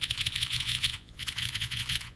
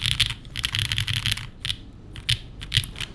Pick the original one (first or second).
second